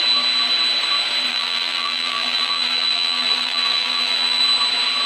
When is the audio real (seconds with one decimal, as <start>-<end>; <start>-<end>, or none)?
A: 0.0-1.3; 4.4-5.1